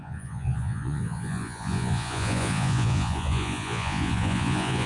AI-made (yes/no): yes